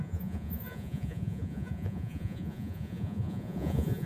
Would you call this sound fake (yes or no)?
yes